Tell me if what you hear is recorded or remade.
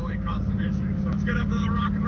remade